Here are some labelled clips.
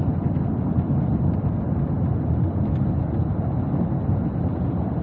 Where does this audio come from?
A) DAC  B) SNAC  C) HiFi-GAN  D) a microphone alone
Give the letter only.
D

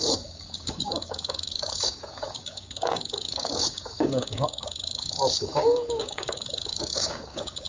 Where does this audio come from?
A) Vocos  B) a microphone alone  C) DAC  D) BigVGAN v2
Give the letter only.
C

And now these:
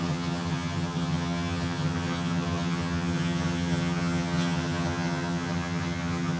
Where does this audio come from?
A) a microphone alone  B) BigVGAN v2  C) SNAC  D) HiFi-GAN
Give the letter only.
D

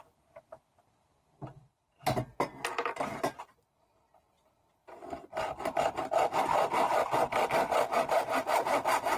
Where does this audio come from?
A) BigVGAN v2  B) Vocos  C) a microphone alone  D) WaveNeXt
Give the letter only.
A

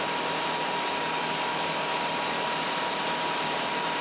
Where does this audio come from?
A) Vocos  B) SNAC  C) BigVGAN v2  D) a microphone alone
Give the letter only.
C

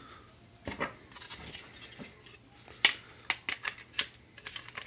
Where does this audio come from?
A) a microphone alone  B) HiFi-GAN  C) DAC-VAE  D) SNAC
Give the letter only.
A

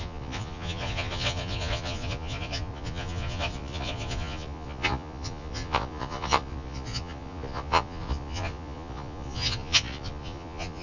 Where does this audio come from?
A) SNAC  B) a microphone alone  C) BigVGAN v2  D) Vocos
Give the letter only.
D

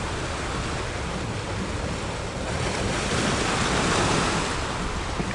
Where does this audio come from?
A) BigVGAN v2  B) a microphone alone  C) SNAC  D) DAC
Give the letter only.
B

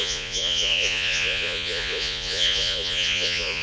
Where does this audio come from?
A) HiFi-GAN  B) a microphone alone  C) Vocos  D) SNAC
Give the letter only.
C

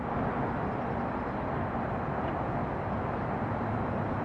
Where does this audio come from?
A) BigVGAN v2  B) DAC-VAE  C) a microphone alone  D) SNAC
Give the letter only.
C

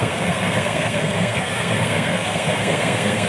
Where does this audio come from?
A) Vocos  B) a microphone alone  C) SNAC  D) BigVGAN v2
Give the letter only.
C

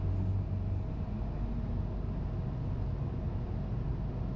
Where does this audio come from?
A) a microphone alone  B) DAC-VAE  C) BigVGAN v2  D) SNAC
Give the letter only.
A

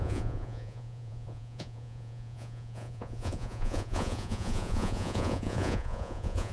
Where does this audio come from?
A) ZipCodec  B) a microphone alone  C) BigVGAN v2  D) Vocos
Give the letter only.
D